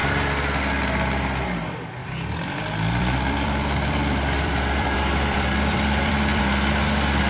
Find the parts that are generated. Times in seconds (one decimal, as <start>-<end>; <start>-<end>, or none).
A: 2.0-6.4